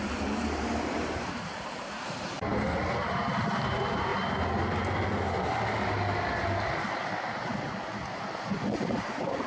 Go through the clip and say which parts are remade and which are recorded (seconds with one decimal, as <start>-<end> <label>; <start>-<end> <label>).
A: 0.0-2.5 remade; 2.5-3.0 recorded; 3.0-4.1 remade; 4.1-8.5 recorded; 8.5-9.5 remade